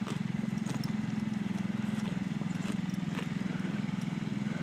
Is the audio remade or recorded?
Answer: recorded